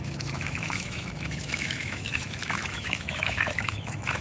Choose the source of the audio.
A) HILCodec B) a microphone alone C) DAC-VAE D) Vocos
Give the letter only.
C